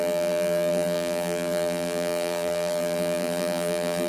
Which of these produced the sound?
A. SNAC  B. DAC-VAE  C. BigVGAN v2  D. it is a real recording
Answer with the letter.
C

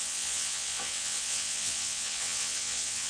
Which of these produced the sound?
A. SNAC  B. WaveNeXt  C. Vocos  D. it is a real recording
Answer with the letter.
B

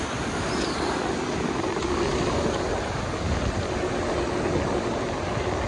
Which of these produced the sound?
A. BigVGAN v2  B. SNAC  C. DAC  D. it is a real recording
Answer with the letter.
D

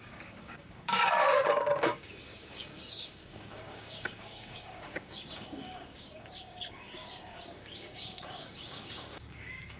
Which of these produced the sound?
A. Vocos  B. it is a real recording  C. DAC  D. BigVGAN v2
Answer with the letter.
C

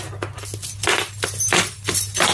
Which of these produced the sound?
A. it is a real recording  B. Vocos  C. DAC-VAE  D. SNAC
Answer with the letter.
A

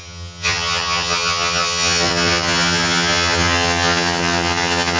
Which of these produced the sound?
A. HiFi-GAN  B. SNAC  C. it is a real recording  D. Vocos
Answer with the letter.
A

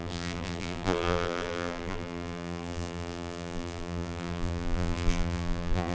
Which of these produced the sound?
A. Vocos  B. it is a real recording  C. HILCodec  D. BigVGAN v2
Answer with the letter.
D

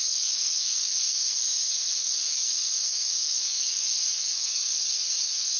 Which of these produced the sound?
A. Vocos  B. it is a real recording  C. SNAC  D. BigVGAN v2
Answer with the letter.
C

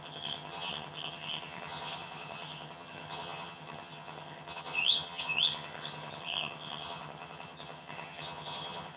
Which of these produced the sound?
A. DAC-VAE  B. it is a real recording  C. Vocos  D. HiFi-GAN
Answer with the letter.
D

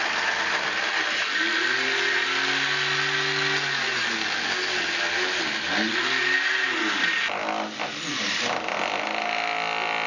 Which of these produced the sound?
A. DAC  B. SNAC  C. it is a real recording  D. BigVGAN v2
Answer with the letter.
C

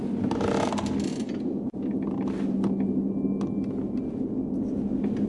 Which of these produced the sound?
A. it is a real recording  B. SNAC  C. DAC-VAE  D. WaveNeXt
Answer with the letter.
A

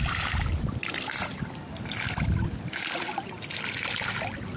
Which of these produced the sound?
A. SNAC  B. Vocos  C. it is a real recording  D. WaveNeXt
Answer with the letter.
C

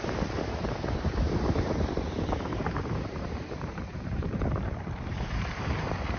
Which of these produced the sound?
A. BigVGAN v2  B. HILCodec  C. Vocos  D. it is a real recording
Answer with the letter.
A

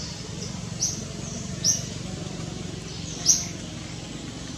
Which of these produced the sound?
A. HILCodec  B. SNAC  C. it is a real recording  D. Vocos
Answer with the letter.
C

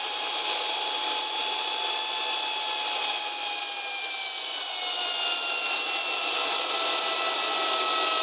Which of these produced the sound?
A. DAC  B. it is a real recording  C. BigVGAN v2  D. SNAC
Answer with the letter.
B